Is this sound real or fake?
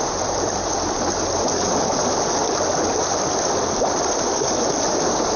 fake